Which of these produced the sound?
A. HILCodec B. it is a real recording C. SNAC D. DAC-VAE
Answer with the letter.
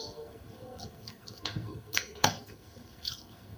C